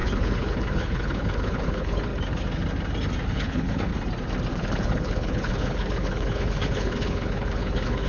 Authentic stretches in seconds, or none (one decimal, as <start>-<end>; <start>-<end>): 2.1-3.3; 3.9-4.5